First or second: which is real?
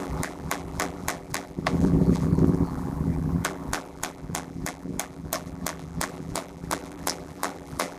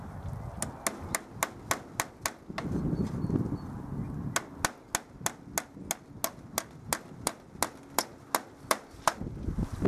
second